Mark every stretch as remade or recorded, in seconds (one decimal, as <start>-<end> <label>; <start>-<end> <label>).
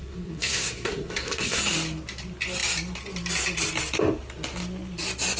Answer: 0.0-1.6 remade; 1.6-5.4 recorded